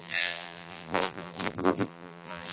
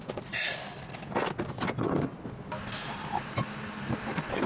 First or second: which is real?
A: second